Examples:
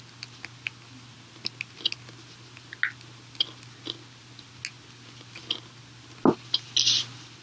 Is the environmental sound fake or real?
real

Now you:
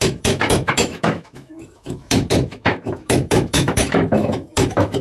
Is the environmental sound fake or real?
fake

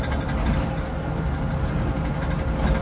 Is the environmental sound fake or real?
real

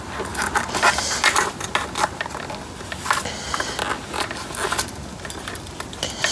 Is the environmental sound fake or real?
real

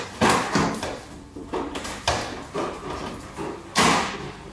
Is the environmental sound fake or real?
real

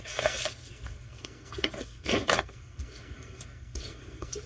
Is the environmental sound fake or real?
fake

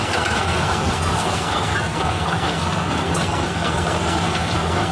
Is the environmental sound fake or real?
fake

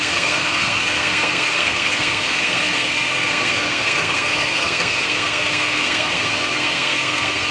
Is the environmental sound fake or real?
fake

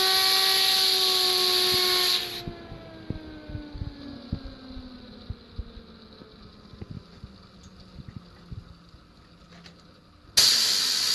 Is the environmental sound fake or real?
real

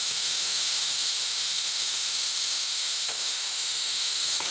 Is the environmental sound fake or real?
fake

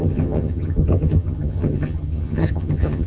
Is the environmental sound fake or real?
fake